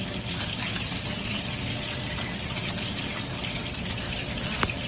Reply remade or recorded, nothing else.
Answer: recorded